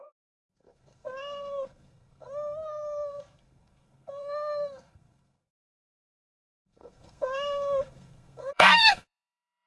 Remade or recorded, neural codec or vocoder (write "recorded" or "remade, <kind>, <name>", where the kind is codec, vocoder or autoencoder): remade, codec, SNAC